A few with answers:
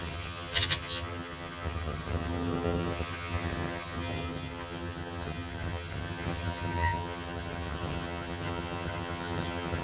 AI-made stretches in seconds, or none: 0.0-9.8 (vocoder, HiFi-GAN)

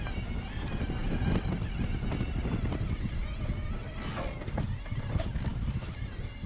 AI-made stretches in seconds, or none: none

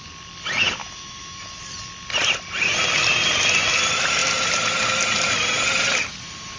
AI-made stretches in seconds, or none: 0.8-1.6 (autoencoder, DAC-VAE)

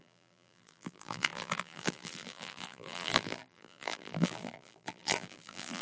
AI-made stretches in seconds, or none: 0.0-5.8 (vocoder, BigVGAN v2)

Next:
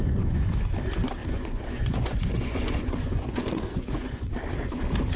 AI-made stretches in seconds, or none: 0.0-0.5 (vocoder, Vocos); 1.2-4.3

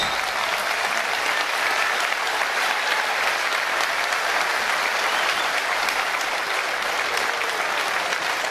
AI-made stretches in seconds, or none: 0.0-8.5 (vocoder, BigVGAN v2)

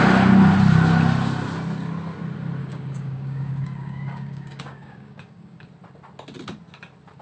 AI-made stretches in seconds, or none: 2.6-5.7 (codec, DAC)